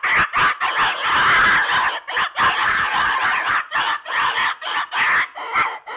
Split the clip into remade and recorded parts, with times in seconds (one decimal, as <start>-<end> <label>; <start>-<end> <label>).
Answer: 0.0-2.6 recorded; 2.6-4.9 remade; 4.9-6.0 recorded